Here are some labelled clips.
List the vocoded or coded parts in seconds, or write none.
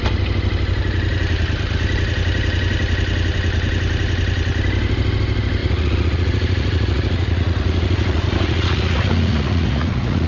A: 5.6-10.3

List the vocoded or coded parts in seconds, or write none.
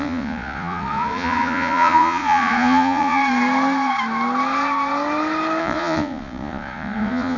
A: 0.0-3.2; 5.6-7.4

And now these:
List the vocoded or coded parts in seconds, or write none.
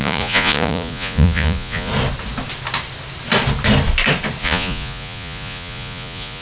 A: 0.0-1.9; 4.4-6.4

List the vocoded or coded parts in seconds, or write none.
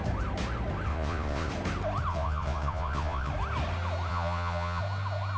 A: 0.9-1.5; 2.1-3.3; 4.1-4.8